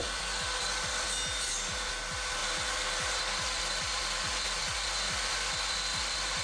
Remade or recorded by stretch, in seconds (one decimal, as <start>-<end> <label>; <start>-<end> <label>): 0.0-6.4 recorded